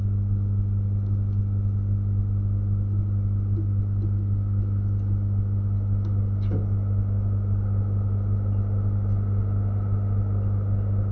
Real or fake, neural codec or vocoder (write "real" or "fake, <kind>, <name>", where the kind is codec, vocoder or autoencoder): real